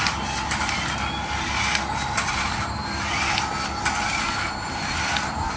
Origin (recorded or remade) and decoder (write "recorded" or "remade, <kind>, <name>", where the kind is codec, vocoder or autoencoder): recorded